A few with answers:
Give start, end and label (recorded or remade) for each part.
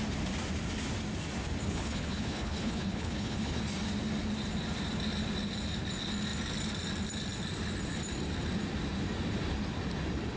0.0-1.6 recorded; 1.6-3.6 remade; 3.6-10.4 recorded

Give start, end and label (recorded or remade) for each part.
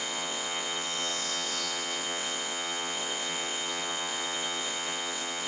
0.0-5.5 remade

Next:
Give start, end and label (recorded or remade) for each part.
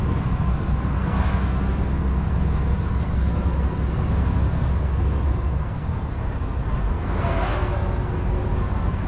0.0-9.1 remade